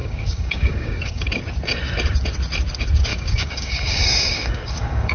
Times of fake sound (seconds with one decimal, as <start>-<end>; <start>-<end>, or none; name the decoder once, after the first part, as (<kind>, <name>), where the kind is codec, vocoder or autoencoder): 0.0-1.2 (codec, DAC); 3.1-5.1